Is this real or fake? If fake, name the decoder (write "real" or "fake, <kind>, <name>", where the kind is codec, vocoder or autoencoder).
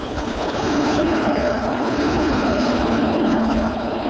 fake, codec, HILCodec